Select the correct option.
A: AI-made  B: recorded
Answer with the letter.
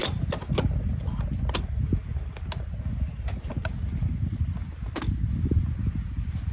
B